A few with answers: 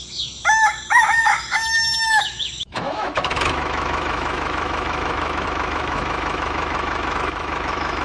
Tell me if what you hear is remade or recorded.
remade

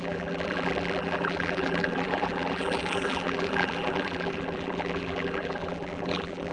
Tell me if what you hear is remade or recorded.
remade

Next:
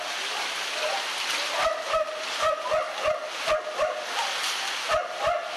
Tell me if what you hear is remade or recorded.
recorded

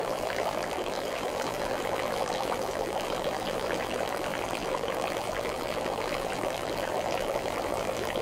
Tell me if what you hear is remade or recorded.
remade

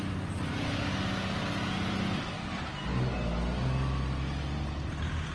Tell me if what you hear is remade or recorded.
recorded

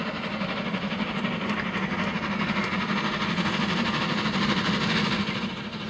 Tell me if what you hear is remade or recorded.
recorded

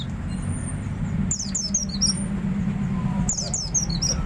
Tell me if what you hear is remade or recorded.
recorded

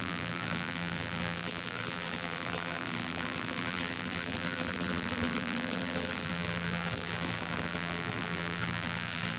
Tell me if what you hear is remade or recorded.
remade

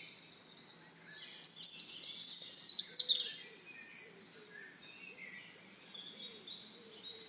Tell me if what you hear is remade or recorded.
recorded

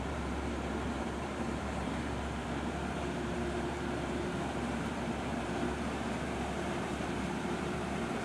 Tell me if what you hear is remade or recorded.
remade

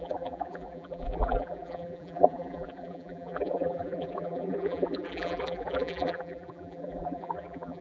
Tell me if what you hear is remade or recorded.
remade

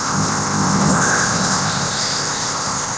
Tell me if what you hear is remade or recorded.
remade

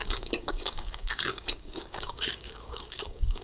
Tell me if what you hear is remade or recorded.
remade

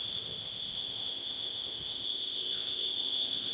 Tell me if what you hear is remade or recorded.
remade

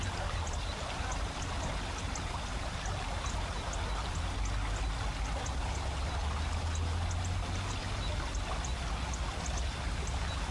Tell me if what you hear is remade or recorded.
recorded